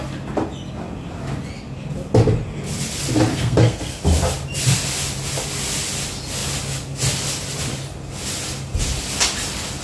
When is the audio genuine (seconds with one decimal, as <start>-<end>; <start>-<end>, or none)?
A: 0.0-3.3; 4.0-9.8